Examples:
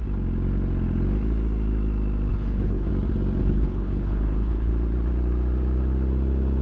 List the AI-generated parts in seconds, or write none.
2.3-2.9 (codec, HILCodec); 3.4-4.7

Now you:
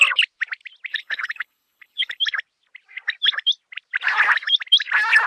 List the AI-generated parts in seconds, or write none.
0.9-2.2 (codec, HILCodec)

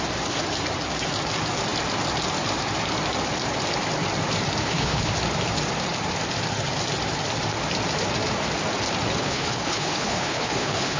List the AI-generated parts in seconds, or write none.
4.6-5.1 (codec, HILCodec); 9.2-11.0

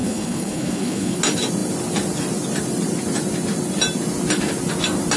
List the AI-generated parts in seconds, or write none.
0.0-1.2 (codec, HILCodec)

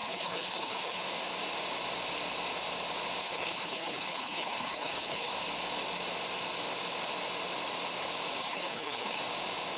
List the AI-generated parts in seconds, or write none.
0.0-1.0 (codec, HILCodec); 3.2-5.3; 8.4-9.2

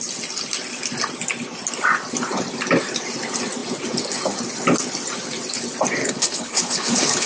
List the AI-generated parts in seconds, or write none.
6.0-7.3 (codec, HILCodec)

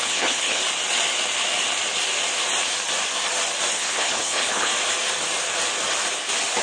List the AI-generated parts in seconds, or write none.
0.0-0.6 (codec, HILCodec); 3.7-4.7